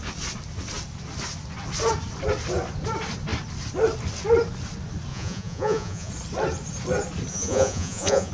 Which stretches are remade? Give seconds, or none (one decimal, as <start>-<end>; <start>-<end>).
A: 5.1-6.1; 7.3-8.3